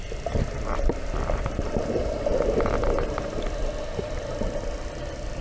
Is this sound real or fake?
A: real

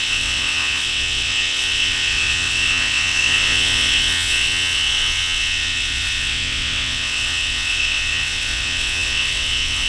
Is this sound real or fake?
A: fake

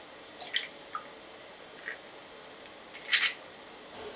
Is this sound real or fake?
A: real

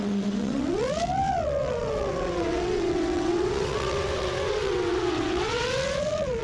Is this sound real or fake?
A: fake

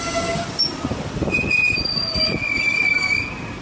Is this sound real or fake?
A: real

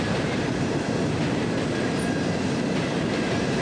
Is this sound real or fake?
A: real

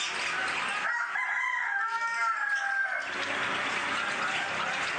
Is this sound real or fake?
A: real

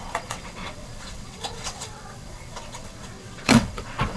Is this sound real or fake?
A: fake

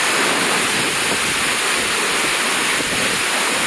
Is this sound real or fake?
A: real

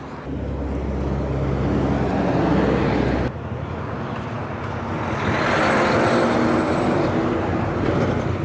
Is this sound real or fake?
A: real